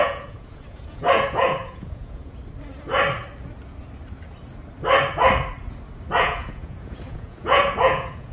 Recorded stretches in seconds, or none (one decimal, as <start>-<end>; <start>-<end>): 2.4-6.2

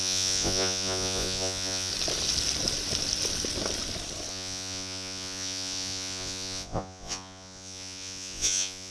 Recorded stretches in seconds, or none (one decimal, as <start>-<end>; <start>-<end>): 1.9-4.3

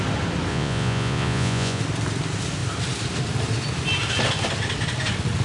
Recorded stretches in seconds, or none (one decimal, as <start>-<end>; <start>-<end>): 0.0-0.5; 1.8-5.4

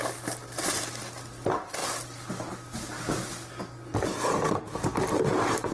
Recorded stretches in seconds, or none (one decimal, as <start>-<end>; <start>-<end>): 0.0-5.7

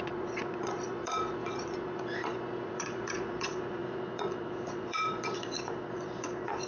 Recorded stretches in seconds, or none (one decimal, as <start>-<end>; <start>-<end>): none

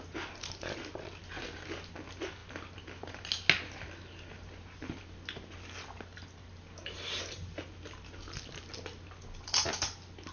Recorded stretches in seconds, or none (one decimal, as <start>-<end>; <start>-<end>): 0.0-10.3